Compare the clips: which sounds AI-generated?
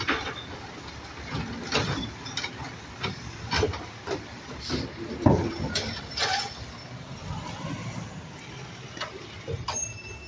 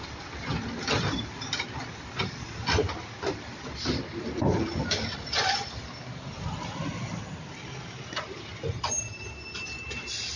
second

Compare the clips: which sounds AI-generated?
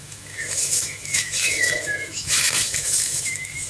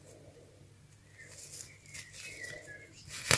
first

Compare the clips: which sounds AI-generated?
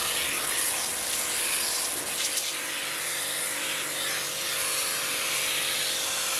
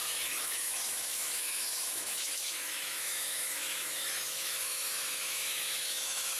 second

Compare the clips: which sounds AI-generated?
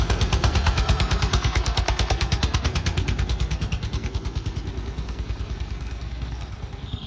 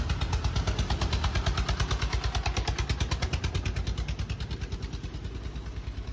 first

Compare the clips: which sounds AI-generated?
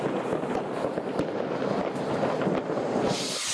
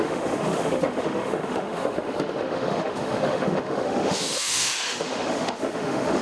second